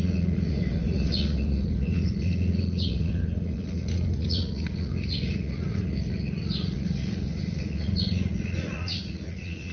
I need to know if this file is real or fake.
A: fake